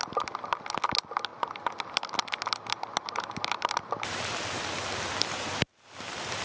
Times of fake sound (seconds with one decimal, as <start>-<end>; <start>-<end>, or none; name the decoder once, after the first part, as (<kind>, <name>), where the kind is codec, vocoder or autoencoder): none